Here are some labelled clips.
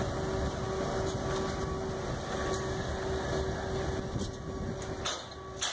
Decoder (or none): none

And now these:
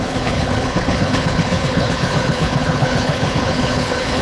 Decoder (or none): codec, HILCodec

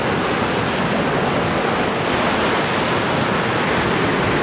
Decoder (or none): none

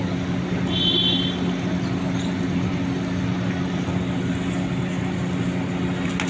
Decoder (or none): none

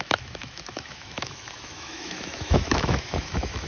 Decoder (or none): autoencoder, DAC-VAE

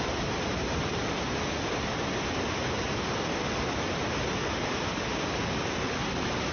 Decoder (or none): none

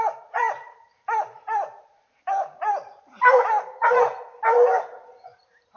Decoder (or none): vocoder, BigVGAN v2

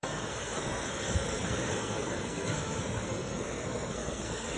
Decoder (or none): codec, SNAC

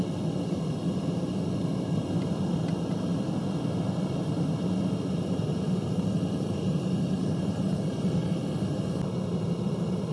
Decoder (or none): none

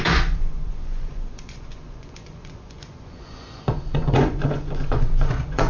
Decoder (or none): vocoder, Vocos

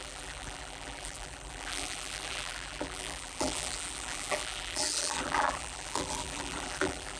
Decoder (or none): vocoder, BigVGAN v2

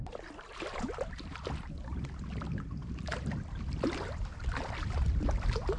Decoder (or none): vocoder, BigVGAN v2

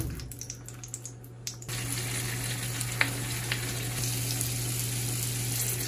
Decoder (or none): none